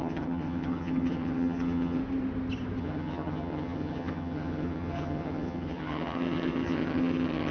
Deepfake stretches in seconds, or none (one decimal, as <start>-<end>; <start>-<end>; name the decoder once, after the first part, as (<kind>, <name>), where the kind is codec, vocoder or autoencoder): 0.0-2.0 (vocoder, HiFi-GAN); 2.8-7.5